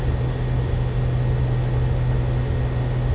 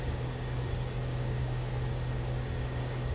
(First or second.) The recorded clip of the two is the first